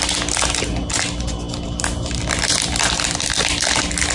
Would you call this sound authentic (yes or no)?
yes